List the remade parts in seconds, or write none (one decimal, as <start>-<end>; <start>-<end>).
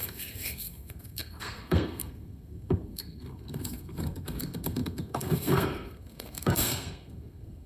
0.0-7.7